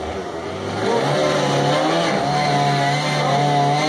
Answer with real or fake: real